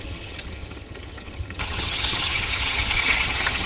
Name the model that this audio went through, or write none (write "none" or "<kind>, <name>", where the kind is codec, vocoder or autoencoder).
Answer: vocoder, HiFi-GAN